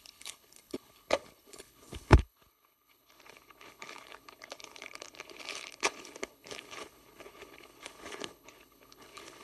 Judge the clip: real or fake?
fake